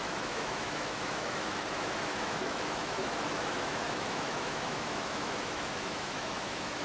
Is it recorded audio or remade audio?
remade